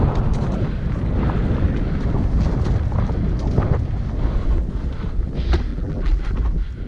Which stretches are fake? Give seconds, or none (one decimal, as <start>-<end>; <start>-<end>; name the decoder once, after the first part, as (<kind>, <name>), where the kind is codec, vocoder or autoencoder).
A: 5.7-6.2 (vocoder, BigVGAN v2)